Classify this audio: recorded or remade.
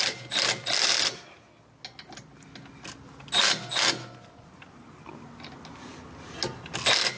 recorded